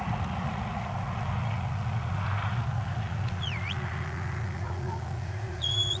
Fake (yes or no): yes